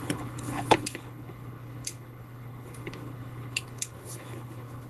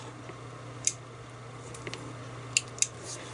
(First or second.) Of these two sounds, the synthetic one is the first